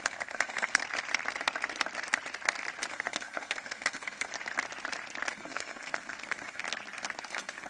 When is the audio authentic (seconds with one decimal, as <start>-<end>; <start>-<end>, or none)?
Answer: 0.8-2.9; 4.3-5.3; 6.6-7.2